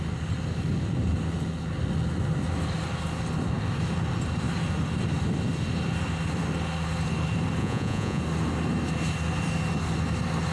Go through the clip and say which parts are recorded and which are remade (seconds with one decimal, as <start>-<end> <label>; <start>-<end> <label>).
0.0-7.6 recorded; 7.6-8.2 remade; 8.2-10.5 recorded